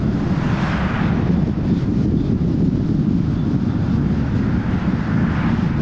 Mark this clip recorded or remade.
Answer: recorded